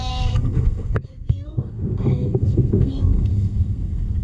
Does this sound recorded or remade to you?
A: remade